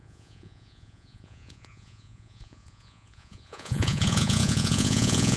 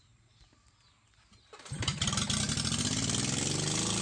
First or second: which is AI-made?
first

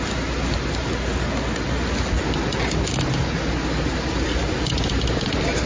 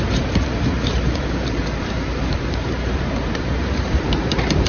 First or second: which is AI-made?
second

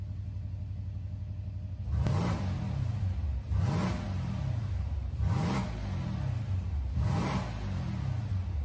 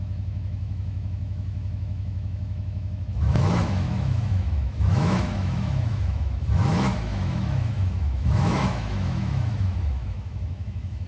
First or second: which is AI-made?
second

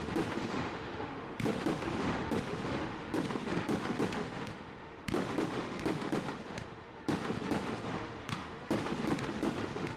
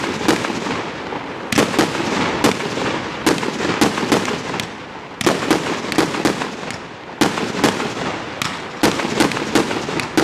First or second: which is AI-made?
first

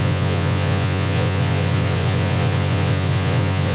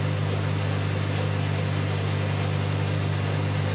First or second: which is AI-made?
first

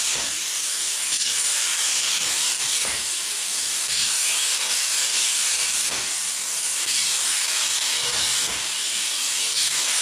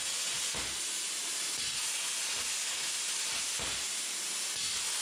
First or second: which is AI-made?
first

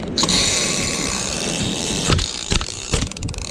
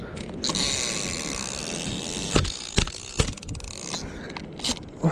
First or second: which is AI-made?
first